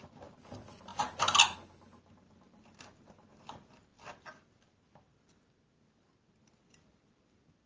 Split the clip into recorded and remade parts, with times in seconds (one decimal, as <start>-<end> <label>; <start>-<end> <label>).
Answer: 0.0-7.7 recorded